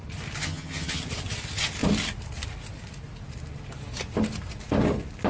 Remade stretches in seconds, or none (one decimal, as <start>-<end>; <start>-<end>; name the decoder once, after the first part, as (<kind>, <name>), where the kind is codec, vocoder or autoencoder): 0.4-1.0 (vocoder, HiFi-GAN)